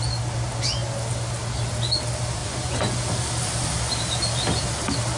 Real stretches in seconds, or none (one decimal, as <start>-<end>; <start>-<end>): 0.0-2.4; 3.0-5.2